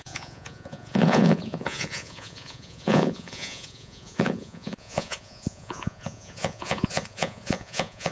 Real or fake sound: fake